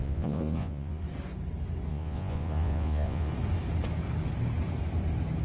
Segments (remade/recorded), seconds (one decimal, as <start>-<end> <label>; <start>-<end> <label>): 0.0-1.0 remade; 1.0-1.9 recorded; 1.9-3.3 remade; 3.3-5.4 recorded